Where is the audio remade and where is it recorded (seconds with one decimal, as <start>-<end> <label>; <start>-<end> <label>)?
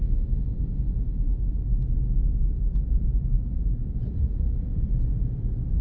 0.0-5.8 recorded